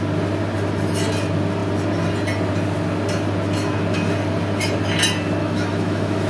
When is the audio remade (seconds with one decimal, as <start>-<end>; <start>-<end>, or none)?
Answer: 5.4-6.3